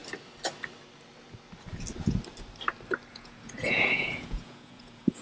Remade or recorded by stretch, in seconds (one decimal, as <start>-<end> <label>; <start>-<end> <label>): 0.0-3.1 recorded; 3.1-5.2 remade